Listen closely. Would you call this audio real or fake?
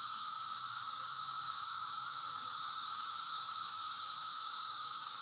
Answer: fake